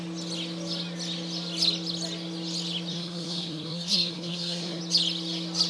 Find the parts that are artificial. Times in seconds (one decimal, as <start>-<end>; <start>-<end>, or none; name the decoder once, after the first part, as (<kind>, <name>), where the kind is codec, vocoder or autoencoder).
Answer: 2.9-4.8 (codec, SNAC)